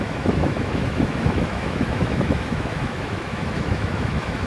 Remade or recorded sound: remade